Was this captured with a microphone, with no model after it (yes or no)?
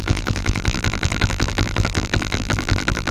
no